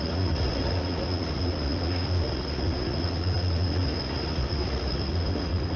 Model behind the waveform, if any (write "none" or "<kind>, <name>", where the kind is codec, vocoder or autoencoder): vocoder, Vocos